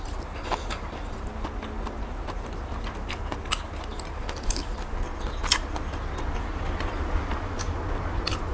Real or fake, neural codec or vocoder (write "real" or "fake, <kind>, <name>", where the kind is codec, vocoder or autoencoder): real